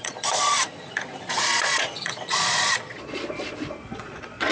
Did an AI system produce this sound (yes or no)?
yes